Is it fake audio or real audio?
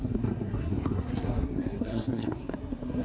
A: fake